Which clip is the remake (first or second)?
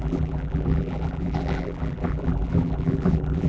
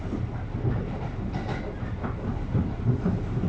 first